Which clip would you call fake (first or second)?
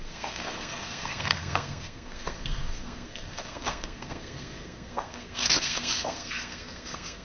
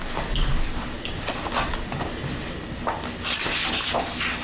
first